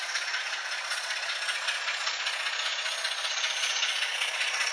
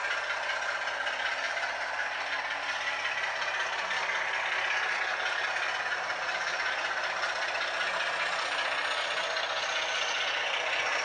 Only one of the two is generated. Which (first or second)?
first